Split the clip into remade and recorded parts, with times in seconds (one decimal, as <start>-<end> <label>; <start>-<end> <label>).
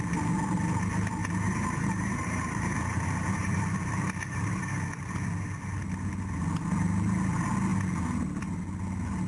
0.0-1.2 recorded; 1.2-5.0 remade; 5.0-9.3 recorded